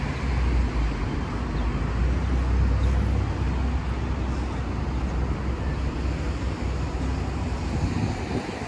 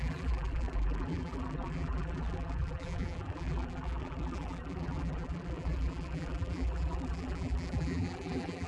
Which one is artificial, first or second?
second